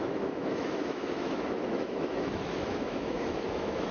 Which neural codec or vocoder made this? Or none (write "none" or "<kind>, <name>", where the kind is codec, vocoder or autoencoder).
autoencoder, DAC-VAE